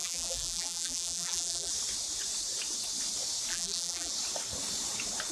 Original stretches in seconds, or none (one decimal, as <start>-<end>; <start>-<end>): 1.7-3.5; 4.1-5.3